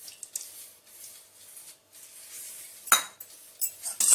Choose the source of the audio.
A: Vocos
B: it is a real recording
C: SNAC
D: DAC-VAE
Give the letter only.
B